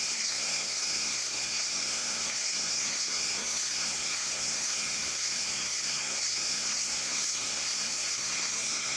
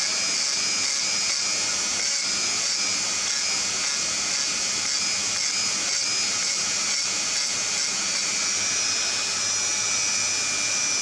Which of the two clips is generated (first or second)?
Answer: first